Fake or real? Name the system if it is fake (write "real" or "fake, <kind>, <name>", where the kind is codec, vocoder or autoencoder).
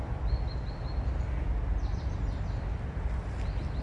real